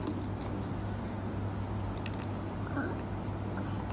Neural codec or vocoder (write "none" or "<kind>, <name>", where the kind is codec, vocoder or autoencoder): none